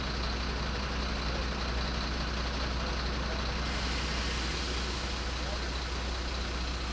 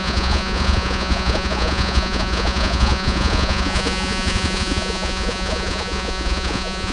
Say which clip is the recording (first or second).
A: first